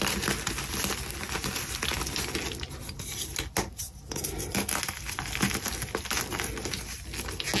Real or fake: real